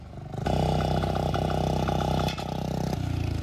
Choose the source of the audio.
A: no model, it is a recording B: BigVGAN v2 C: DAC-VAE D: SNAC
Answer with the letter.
A